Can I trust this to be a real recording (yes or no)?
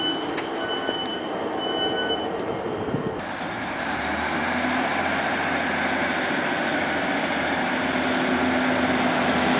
yes